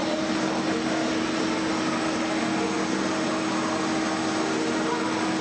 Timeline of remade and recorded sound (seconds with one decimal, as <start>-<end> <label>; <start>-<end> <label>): 0.0-5.4 recorded